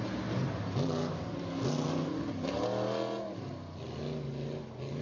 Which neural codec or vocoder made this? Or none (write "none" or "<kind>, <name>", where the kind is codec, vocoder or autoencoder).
none